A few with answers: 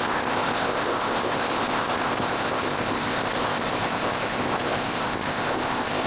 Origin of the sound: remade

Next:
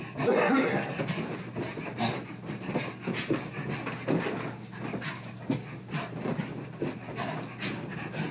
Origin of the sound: recorded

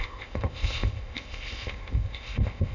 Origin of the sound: remade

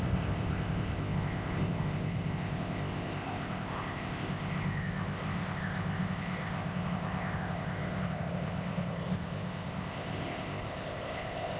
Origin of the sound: remade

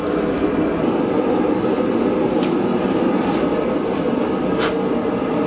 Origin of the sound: recorded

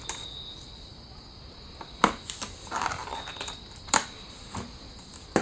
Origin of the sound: recorded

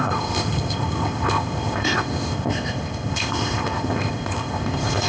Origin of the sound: remade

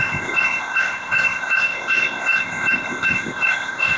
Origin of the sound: remade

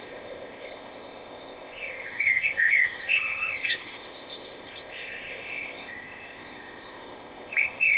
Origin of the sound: remade